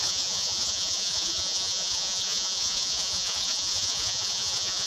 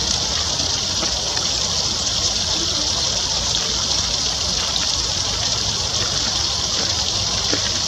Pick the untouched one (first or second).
second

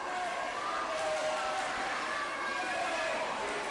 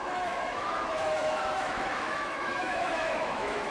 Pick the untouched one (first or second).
first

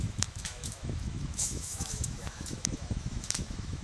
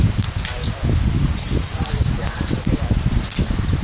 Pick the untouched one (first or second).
second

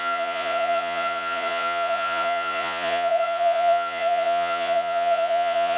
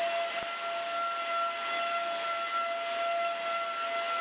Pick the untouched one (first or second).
second